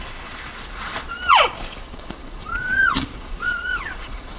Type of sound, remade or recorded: remade